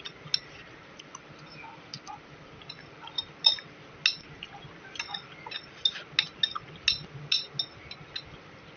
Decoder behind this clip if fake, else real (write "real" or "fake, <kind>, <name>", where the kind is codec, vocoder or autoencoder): real